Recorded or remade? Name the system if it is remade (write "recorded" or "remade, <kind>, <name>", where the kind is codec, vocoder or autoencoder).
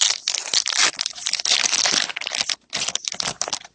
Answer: recorded